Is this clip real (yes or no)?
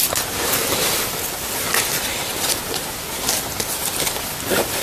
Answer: yes